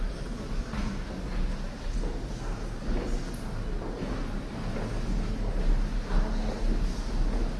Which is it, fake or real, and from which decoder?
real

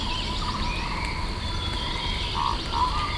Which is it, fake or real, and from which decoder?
real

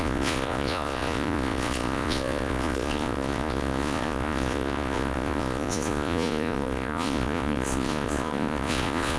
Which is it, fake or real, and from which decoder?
fake, vocoder, Vocos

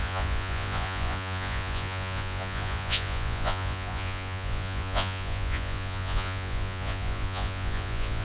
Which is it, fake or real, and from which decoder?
fake, vocoder, Vocos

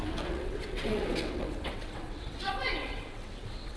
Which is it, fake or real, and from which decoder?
fake, vocoder, WaveNeXt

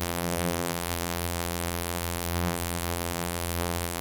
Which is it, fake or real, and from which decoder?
fake, vocoder, BigVGAN v2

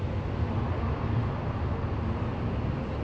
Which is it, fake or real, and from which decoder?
real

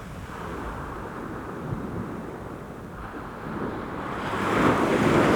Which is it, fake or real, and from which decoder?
real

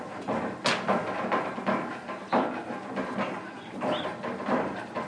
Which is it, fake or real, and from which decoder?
real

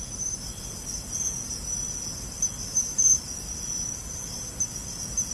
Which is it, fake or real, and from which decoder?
real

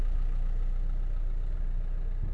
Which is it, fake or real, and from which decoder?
real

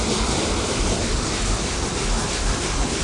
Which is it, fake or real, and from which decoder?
real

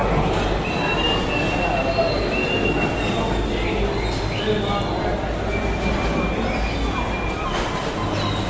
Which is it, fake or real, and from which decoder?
real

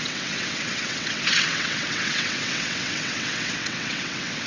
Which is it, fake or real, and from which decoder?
fake, vocoder, WaveNeXt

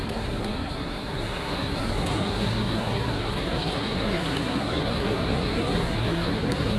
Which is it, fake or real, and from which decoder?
fake, codec, SNAC